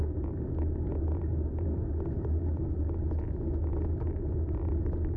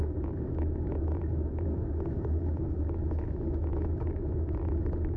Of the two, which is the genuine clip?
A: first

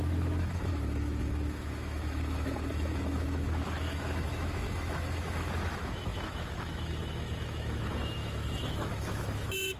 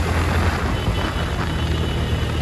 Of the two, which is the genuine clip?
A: second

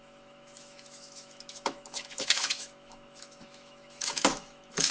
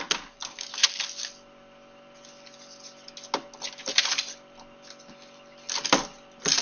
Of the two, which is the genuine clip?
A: second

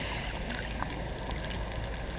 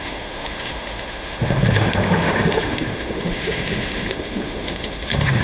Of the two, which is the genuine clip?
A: first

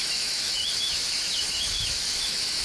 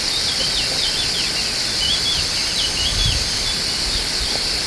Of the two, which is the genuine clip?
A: second